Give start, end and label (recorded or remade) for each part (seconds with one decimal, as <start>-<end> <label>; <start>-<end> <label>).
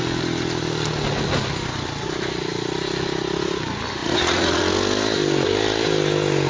0.0-4.0 recorded; 4.0-4.6 remade; 4.6-6.5 recorded